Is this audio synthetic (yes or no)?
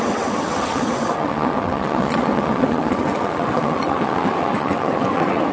yes